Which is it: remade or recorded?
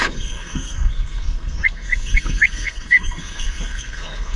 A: remade